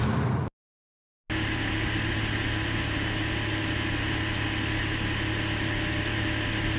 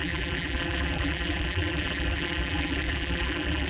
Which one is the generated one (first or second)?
second